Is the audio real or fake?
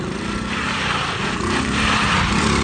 fake